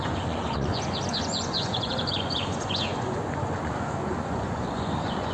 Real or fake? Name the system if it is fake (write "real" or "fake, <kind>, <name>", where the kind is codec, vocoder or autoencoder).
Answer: fake, vocoder, Vocos